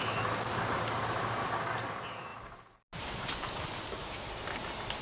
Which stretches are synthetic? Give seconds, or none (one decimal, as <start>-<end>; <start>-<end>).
none